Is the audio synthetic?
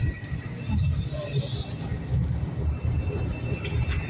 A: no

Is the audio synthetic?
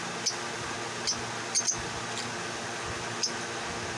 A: no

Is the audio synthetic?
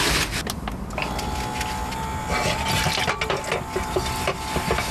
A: no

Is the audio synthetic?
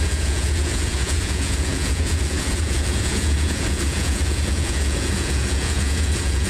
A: yes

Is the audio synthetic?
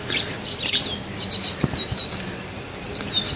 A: no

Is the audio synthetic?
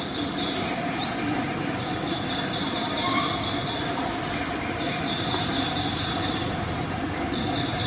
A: yes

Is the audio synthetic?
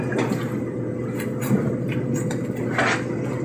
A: no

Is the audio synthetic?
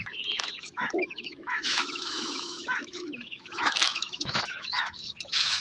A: yes